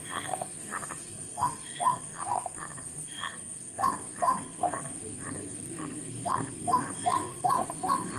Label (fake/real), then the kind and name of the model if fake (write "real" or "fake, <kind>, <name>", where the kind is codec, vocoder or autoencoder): fake, codec, SNAC